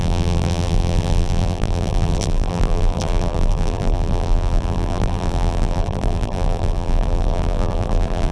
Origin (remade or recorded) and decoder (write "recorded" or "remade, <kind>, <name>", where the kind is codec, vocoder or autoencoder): remade, vocoder, BigVGAN v2